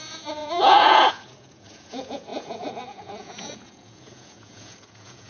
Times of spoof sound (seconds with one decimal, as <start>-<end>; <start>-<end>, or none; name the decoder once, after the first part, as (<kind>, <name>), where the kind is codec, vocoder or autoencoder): 0.0-5.3 (vocoder, Vocos)